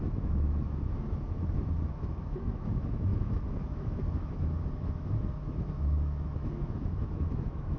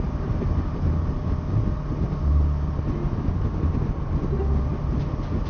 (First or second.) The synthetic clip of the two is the first